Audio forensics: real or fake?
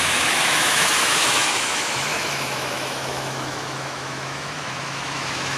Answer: fake